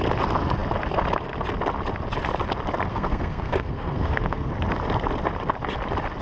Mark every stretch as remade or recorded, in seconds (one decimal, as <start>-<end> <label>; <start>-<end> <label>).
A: 0.0-2.9 recorded; 2.9-4.5 remade; 4.5-6.2 recorded